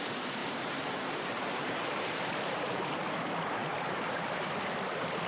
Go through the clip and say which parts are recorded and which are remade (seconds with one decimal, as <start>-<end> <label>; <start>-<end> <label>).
0.0-0.4 recorded; 0.4-3.1 remade; 3.1-3.6 recorded; 3.6-4.5 remade; 4.5-5.3 recorded